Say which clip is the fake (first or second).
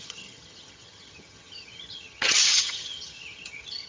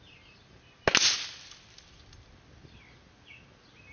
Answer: first